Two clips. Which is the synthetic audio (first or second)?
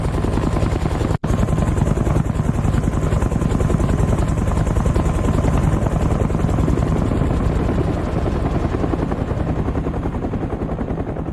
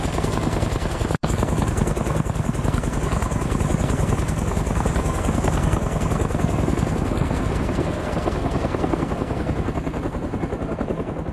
second